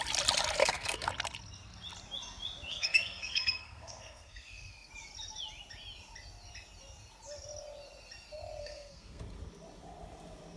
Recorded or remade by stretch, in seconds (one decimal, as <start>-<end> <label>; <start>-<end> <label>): 0.0-0.6 recorded; 0.6-1.1 remade; 1.1-2.7 recorded; 2.7-4.9 remade; 4.9-8.6 recorded; 8.6-9.2 remade; 9.2-10.6 recorded